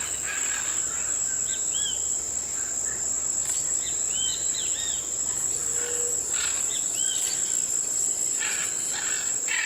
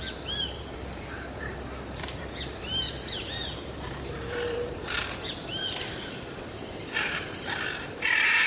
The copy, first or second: second